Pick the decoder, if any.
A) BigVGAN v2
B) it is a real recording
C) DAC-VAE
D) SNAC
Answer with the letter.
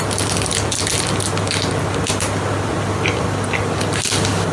B